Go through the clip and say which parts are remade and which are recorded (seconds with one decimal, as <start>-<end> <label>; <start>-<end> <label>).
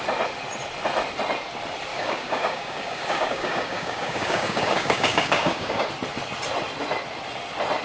0.0-1.9 recorded; 1.9-5.9 remade; 5.9-7.8 recorded